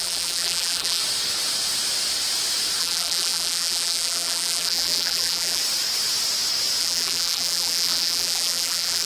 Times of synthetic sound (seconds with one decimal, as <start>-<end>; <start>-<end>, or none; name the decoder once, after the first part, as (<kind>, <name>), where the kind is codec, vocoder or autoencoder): 0.0-1.0 (vocoder, BigVGAN v2); 2.8-5.6; 6.8-9.1